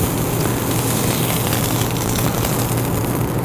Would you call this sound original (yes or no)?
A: yes